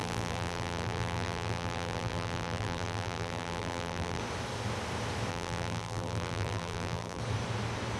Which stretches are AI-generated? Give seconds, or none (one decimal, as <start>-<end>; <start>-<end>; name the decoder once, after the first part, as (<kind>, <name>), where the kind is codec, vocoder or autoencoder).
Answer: 0.0-4.2 (vocoder, BigVGAN v2); 5.3-7.2